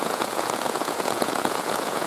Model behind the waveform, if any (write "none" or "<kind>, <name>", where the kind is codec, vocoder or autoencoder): vocoder, Vocos